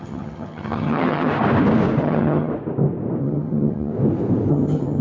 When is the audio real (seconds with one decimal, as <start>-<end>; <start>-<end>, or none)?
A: 1.3-2.0; 2.5-3.2; 3.9-4.5

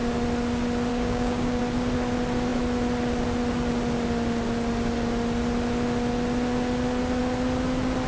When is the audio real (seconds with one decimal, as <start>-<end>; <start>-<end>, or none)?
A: 0.0-0.9; 1.6-8.1

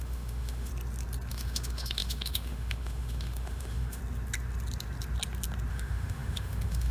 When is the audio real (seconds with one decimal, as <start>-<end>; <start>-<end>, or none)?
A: 0.7-1.3; 4.0-5.7

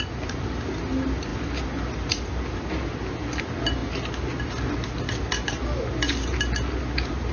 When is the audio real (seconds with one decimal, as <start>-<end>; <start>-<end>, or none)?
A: 0.0-7.3